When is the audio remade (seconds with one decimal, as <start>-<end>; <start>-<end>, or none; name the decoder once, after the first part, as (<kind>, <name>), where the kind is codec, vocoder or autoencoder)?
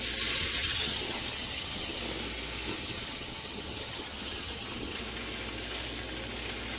0.6-2.0 (vocoder, HiFi-GAN); 2.7-5.0